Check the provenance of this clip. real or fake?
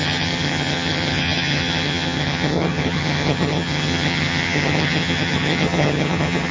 fake